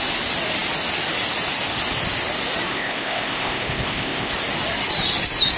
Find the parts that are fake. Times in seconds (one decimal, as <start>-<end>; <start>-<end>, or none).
2.7-4.3